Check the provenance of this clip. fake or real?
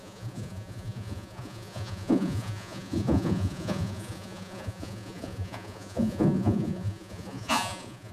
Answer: fake